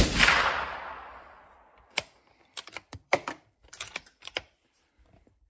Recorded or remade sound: remade